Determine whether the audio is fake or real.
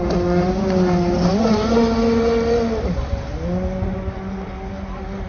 real